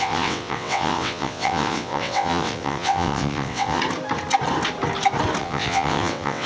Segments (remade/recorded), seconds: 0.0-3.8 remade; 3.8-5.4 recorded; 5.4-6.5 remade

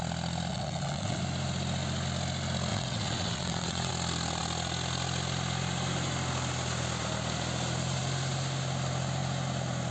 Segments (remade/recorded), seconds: 0.0-0.5 recorded; 0.5-1.2 remade; 1.2-2.7 recorded; 2.7-3.9 remade; 3.9-9.9 recorded

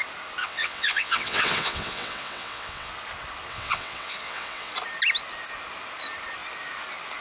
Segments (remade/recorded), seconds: 0.0-0.4 recorded; 0.4-2.9 remade; 2.9-3.5 recorded; 3.5-4.7 remade; 4.7-7.2 recorded

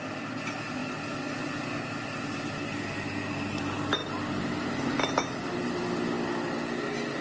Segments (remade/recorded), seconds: 0.0-7.2 recorded

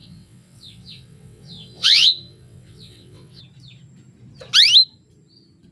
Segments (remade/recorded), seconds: 0.0-3.4 remade; 3.4-5.7 recorded

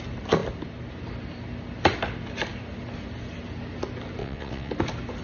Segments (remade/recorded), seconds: 0.0-4.2 recorded; 4.2-4.7 remade; 4.7-5.2 recorded